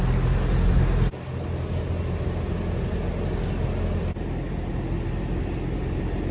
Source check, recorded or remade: recorded